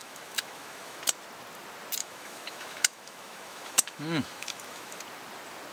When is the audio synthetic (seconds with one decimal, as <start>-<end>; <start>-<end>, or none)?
0.0-1.0; 2.0-5.0